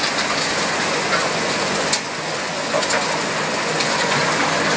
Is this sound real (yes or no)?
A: no